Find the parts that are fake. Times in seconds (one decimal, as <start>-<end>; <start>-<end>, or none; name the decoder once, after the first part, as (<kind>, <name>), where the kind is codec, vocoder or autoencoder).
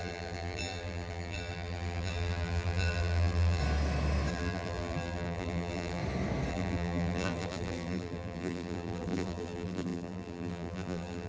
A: 0.0-3.6 (vocoder, BigVGAN v2); 4.3-6.0; 6.5-11.3